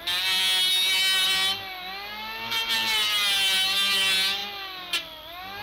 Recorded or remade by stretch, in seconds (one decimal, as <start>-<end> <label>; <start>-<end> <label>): 0.0-5.6 recorded